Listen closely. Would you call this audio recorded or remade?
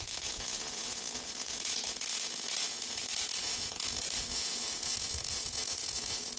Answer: remade